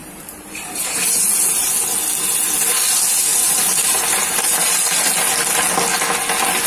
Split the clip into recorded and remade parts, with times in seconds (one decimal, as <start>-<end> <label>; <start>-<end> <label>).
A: 0.0-1.7 remade; 1.7-3.3 recorded; 3.3-4.7 remade; 4.7-6.7 recorded